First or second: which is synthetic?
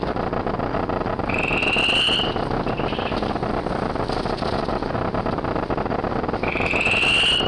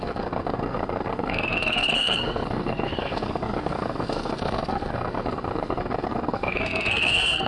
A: second